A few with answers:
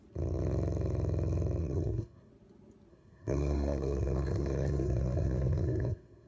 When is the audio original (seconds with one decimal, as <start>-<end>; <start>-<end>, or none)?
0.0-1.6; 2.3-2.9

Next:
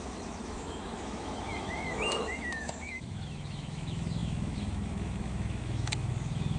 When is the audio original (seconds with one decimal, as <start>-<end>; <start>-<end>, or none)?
none

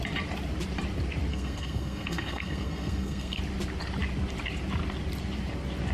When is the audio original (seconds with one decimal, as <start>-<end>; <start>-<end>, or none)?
0.0-1.3; 3.4-5.9

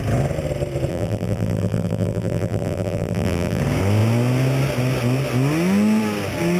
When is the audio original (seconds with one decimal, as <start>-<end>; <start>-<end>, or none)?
0.0-0.9; 3.6-6.6

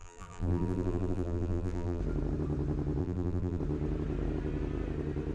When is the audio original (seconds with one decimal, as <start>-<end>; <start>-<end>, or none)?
2.0-3.0; 3.6-5.3